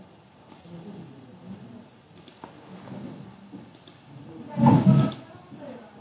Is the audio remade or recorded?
recorded